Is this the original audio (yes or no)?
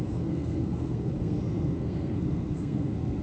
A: no